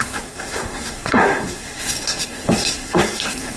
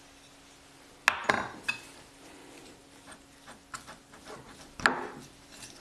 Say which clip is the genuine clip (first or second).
second